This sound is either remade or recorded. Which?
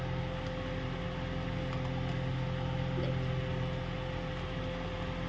recorded